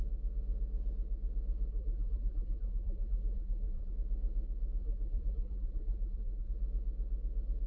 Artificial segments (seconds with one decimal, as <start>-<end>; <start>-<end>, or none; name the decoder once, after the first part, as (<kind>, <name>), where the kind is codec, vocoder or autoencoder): 1.7-3.9 (vocoder, BigVGAN v2); 4.8-6.5